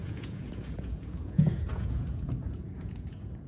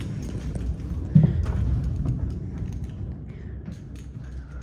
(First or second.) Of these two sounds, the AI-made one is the first